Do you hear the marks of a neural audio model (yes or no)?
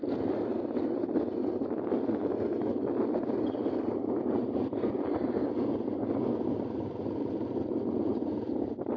no